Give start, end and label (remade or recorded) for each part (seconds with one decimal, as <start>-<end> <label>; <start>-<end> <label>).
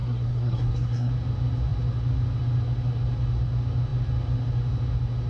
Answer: 0.0-1.1 remade; 1.1-5.3 recorded